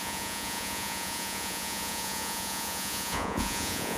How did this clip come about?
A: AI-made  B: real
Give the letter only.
A